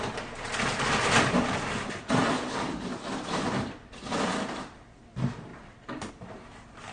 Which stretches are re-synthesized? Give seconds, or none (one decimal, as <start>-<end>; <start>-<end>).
0.0-2.9; 3.7-5.5; 6.1-6.9